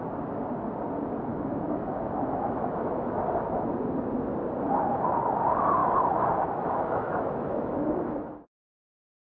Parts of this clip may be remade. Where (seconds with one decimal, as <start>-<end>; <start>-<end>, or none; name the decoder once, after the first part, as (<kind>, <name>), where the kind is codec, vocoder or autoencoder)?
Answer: 1.3-3.2 (autoencoder, DAC-VAE); 5.8-8.2